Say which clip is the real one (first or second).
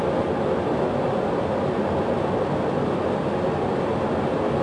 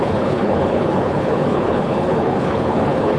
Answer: first